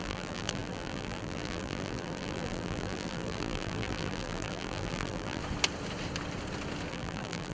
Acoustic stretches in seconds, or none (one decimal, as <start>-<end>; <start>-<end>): 5.4-6.9